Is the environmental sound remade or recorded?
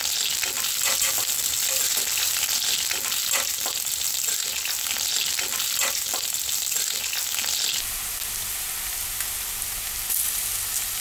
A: recorded